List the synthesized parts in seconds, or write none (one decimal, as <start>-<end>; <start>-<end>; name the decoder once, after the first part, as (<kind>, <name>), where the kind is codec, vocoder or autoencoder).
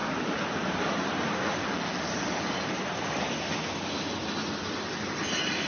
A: 0.0-3.4 (vocoder, BigVGAN v2)